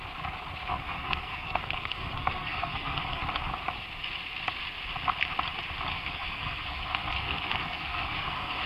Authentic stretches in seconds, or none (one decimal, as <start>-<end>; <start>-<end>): 0.0-0.7; 3.2-5.9